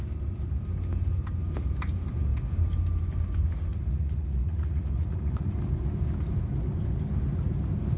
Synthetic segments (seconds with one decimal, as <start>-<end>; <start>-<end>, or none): 3.7-5.5